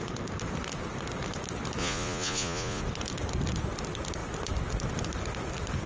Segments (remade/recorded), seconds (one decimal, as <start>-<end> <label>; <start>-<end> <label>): 0.0-1.8 recorded; 1.8-2.8 remade; 2.8-5.9 recorded